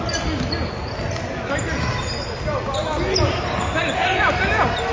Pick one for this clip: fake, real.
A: real